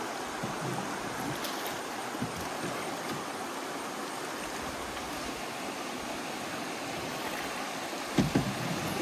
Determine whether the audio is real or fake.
real